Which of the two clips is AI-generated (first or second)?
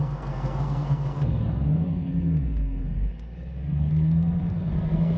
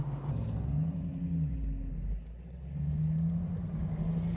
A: first